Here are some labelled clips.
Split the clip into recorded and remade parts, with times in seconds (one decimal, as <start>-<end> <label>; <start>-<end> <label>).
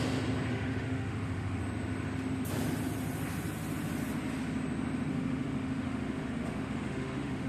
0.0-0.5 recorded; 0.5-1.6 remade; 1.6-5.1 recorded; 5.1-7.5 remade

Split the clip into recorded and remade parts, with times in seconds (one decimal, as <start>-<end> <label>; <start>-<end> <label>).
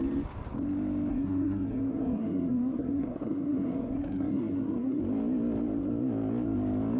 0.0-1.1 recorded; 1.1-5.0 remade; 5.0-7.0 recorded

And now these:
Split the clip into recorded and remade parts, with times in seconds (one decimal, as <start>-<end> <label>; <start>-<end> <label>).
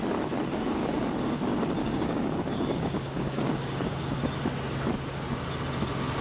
0.0-0.5 recorded; 0.5-1.4 remade; 1.4-1.8 recorded; 1.8-4.2 remade; 4.2-6.2 recorded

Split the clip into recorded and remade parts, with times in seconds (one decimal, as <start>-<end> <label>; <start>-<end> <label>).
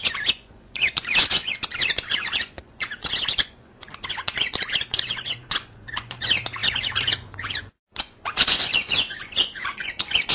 0.0-10.3 remade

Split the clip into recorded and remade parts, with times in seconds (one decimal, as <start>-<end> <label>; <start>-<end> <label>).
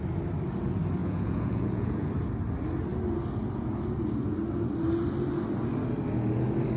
0.0-1.0 recorded; 1.0-2.1 remade; 2.1-6.8 recorded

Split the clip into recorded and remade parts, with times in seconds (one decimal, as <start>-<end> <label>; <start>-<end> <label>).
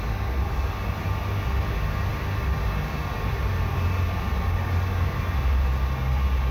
0.0-6.5 recorded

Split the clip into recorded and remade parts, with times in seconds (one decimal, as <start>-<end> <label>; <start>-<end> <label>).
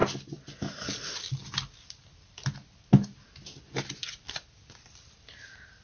0.0-5.8 recorded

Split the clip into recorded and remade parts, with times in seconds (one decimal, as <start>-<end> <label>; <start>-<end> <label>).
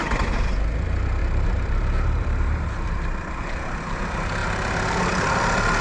0.0-1.2 recorded; 1.2-4.0 remade; 4.0-5.8 recorded